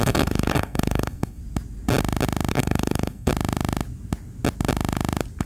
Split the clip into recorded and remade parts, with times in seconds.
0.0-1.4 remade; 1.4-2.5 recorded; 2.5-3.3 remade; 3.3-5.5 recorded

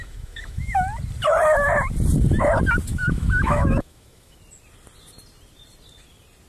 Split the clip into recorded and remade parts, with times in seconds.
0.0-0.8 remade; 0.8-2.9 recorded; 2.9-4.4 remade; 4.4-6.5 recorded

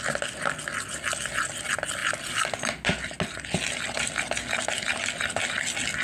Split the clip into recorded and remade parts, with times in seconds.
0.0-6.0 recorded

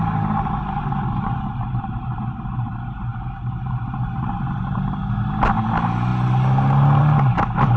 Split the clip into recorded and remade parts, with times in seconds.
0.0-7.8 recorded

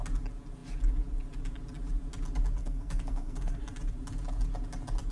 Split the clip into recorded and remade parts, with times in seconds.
0.0-2.6 recorded; 2.6-3.6 remade; 3.6-5.1 recorded

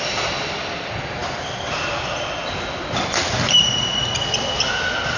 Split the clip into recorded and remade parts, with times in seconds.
0.0-5.2 recorded